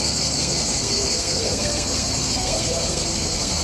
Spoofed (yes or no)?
yes